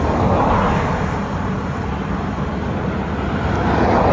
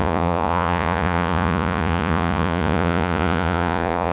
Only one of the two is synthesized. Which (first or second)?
second